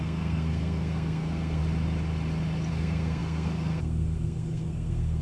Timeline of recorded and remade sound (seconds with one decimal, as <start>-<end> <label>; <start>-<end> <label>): 0.0-1.6 remade; 1.6-2.7 recorded; 2.7-5.2 remade